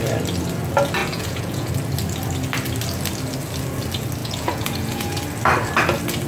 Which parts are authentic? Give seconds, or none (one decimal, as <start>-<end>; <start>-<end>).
0.0-1.0; 1.7-4.2; 5.2-6.3